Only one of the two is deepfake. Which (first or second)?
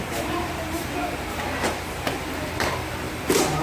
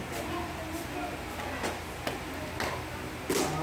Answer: first